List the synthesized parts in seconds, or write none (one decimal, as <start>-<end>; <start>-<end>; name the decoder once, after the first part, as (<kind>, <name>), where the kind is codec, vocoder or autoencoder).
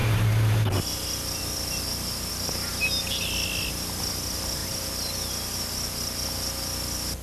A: none